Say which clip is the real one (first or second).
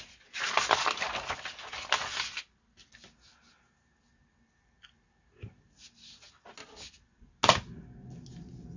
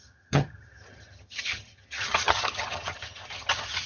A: first